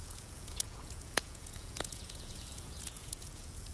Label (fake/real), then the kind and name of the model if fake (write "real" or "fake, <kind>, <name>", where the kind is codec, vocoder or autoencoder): fake, vocoder, Vocos